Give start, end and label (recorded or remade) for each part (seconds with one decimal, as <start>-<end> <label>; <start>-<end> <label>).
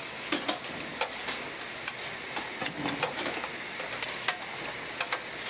0.0-5.5 recorded